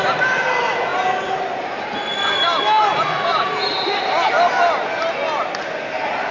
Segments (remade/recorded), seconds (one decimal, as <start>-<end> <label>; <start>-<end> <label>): 0.0-6.3 recorded

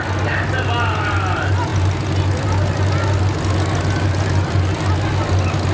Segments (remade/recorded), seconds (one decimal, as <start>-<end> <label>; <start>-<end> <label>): 0.0-5.7 recorded

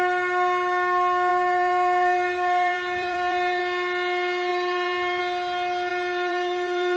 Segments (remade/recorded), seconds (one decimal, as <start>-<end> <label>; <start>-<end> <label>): 0.0-1.3 recorded; 1.3-3.6 remade; 3.6-4.5 recorded; 4.5-5.2 remade; 5.2-5.9 recorded; 5.9-7.0 remade